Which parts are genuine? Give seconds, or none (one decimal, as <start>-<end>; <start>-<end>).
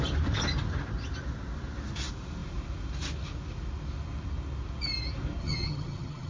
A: 0.0-5.4